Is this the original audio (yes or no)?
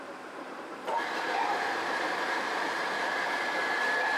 no